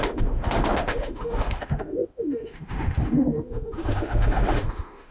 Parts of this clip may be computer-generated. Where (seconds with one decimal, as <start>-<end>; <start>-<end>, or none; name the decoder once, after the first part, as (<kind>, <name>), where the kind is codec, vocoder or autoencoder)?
0.0-5.1 (autoencoder, DAC-VAE)

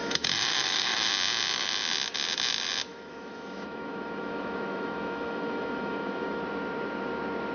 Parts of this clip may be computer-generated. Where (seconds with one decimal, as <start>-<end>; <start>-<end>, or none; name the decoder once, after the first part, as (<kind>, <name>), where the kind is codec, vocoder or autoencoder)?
0.0-1.1 (autoencoder, DAC-VAE); 2.9-6.4

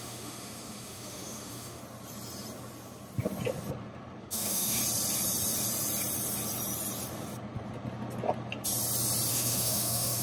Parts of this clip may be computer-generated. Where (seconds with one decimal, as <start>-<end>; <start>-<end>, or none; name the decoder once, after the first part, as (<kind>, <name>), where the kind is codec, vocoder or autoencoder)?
0.0-1.8 (autoencoder, DAC-VAE); 4.2-4.8; 9.3-10.2

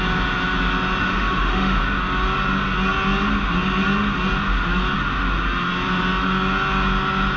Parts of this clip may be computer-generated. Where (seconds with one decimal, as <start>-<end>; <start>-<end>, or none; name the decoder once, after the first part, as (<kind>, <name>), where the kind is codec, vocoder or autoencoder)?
1.0-1.8 (autoencoder, DAC-VAE)